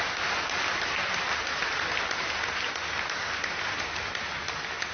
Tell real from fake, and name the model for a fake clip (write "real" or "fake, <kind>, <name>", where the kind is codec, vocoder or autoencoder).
real